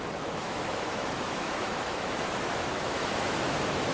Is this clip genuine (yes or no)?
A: no